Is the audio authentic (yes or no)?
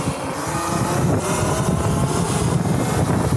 yes